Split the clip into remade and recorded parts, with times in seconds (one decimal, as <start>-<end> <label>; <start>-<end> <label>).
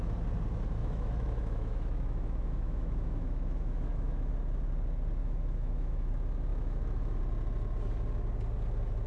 0.0-0.8 recorded; 0.8-4.3 remade; 4.3-5.2 recorded; 5.2-6.1 remade; 6.1-6.5 recorded; 6.5-7.2 remade; 7.2-9.1 recorded